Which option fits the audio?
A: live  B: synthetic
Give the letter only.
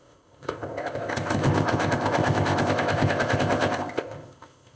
B